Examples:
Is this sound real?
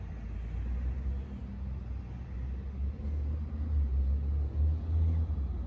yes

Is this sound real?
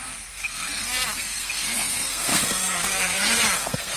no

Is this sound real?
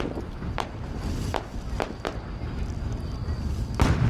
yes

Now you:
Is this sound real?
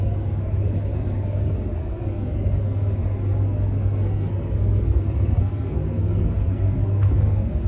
no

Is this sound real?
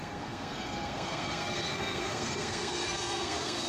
no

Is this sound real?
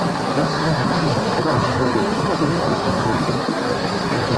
no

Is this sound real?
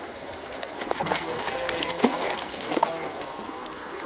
no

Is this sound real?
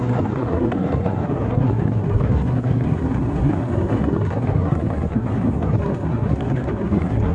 no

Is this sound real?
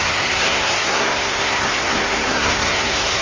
no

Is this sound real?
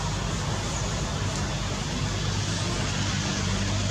yes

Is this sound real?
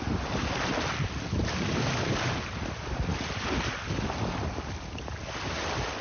yes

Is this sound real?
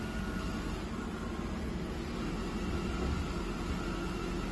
yes